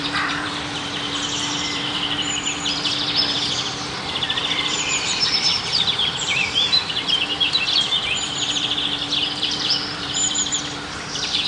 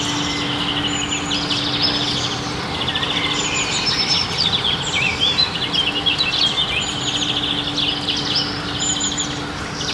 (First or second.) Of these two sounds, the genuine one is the second